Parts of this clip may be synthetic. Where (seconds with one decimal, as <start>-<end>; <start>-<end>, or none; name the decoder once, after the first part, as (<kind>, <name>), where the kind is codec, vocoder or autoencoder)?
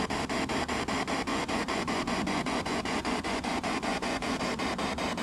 1.3-4.4 (vocoder, Vocos)